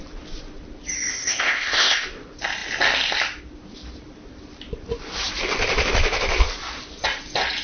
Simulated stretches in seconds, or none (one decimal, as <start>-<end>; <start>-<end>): 1.1-2.1

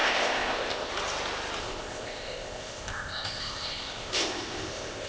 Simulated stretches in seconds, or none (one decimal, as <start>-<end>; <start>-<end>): 0.0-0.9; 1.6-5.1

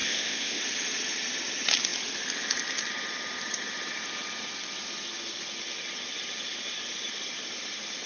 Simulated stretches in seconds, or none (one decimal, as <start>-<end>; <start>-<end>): 0.0-0.6